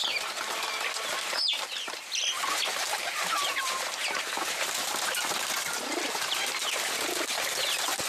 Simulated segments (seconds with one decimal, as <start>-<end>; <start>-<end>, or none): none